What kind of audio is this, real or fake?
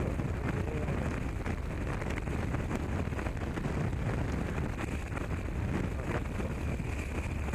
real